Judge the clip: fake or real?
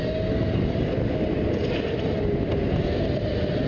real